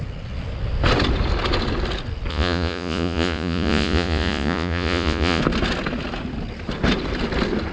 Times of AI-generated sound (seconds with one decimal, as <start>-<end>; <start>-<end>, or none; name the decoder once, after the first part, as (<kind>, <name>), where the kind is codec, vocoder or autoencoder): 2.3-5.4 (vocoder, Vocos)